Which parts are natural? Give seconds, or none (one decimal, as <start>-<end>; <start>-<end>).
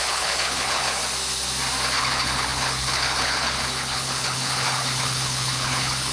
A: 1.0-2.0